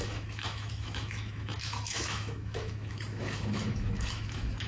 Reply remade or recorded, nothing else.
remade